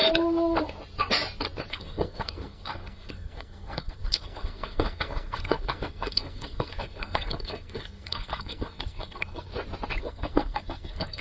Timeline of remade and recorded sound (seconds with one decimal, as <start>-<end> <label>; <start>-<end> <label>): 0.0-1.7 recorded; 1.7-9.5 remade; 9.5-10.0 recorded; 10.0-11.2 remade